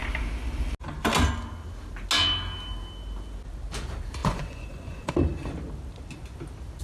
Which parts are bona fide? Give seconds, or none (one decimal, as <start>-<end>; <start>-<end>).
0.0-4.2; 5.1-6.8